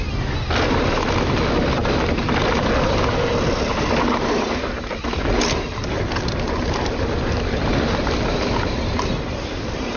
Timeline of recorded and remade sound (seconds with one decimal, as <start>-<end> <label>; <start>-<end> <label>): 0.0-10.0 recorded